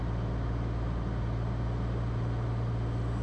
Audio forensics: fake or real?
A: real